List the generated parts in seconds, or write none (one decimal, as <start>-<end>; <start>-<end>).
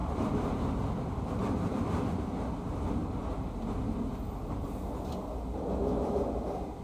0.0-2.5